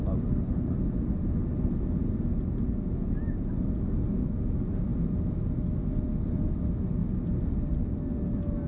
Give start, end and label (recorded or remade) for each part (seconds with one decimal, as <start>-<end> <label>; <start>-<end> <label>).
0.0-8.7 recorded